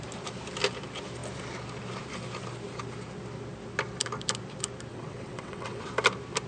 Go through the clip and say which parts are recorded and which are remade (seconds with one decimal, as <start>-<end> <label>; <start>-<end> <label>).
0.0-4.9 recorded; 4.9-5.9 remade; 5.9-6.5 recorded